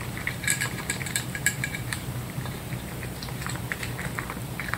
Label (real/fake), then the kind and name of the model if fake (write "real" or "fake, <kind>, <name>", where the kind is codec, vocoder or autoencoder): fake, vocoder, BigVGAN v2